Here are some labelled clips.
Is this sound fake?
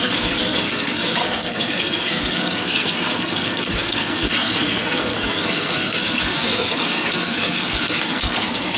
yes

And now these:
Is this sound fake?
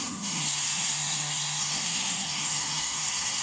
yes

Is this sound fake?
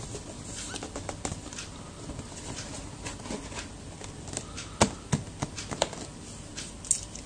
no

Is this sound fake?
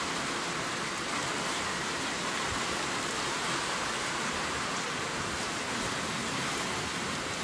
yes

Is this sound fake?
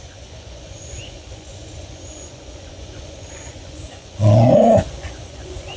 yes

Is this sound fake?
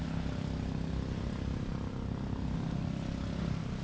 no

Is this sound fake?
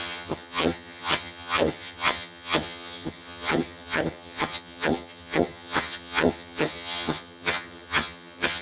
yes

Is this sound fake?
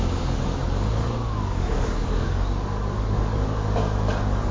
yes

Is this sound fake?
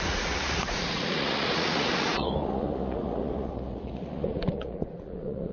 yes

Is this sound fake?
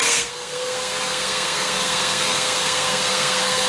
yes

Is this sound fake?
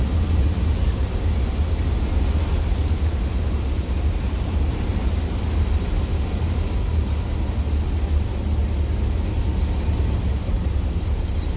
no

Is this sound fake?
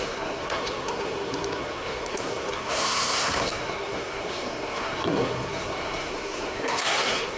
yes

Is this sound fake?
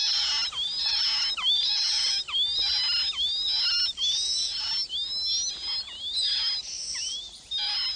no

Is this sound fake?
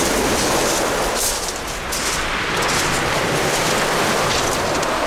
no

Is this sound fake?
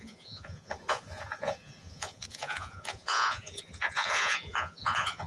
yes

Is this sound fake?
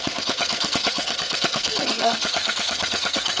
yes